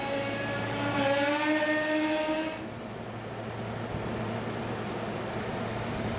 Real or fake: real